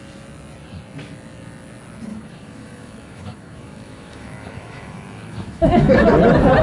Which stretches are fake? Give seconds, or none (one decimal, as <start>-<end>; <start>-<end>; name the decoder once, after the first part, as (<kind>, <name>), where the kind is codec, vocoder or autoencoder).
2.1-6.1 (autoencoder, DAC-VAE)